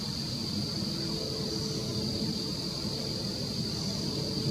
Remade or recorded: recorded